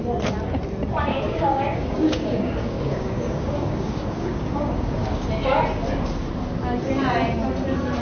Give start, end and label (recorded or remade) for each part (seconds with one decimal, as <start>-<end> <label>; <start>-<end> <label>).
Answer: 0.0-1.1 recorded; 1.1-5.3 remade; 5.3-8.0 recorded